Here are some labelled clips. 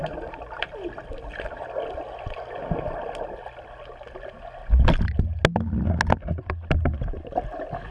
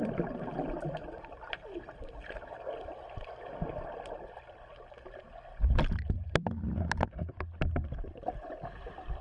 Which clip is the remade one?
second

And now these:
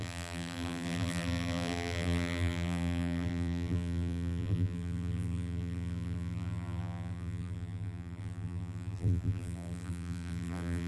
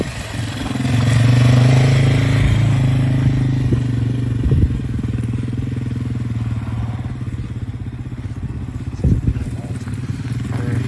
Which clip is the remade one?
first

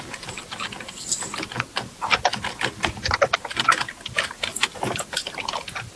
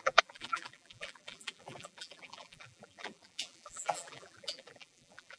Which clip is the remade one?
second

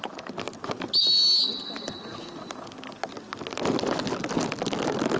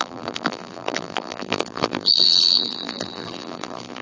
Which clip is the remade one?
second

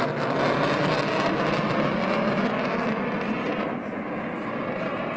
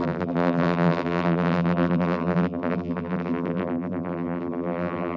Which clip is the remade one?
second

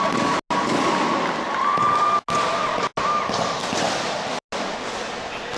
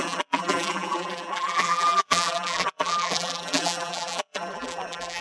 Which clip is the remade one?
second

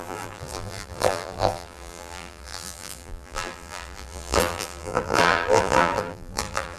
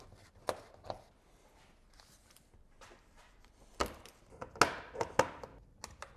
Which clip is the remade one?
first